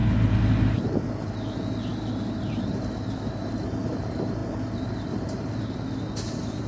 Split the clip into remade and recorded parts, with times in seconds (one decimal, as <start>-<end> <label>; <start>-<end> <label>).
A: 0.0-6.7 recorded